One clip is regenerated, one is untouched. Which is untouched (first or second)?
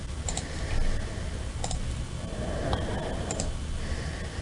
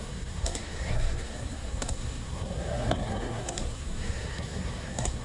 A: first